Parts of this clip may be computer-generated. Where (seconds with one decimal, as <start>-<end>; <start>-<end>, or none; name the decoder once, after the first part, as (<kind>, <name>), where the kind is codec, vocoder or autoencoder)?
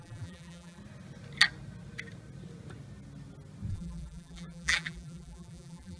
0.0-0.8 (vocoder, BigVGAN v2); 3.7-6.0